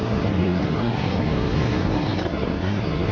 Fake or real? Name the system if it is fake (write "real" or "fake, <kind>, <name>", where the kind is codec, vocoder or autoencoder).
fake, codec, SNAC